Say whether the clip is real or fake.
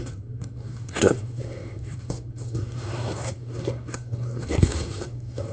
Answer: fake